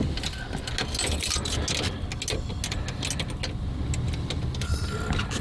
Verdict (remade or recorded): recorded